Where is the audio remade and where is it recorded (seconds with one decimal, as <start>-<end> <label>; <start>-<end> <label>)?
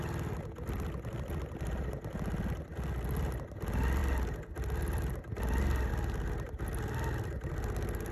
0.0-8.1 recorded